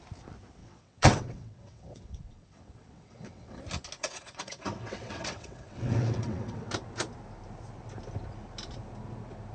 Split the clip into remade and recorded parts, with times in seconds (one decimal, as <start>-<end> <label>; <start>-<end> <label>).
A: 0.0-0.6 recorded; 0.6-3.6 remade; 3.6-4.0 recorded; 4.0-6.7 remade; 6.7-9.5 recorded